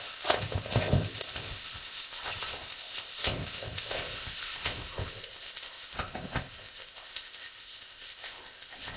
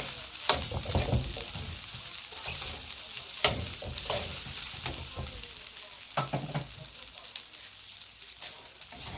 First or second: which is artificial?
first